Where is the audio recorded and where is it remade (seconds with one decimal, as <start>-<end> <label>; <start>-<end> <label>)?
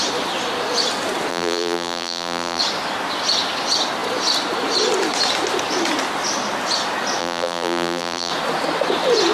0.0-1.3 recorded; 1.3-2.6 remade; 2.6-7.2 recorded; 7.2-8.3 remade; 8.3-9.3 recorded